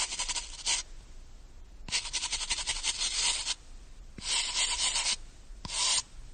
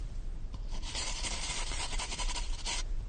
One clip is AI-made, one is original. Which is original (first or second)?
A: first